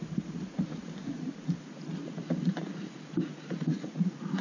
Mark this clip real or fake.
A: fake